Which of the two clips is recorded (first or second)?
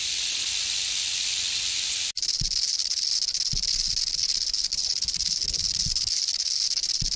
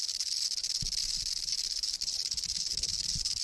first